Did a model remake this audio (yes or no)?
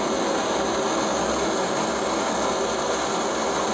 no